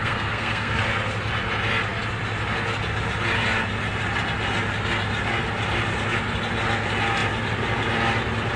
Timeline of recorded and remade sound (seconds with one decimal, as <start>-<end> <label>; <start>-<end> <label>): 0.0-0.8 remade; 0.8-8.6 recorded